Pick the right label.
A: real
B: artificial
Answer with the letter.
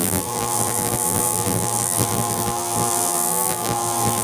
B